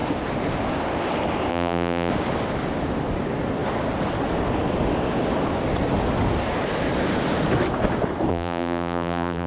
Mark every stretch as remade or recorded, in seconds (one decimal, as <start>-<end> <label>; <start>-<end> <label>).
0.0-1.5 recorded; 1.5-2.1 remade; 2.1-8.3 recorded; 8.3-9.5 remade